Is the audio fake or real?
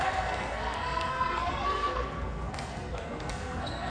fake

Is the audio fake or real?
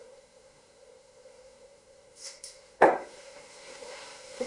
fake